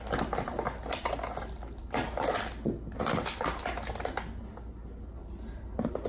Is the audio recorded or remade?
recorded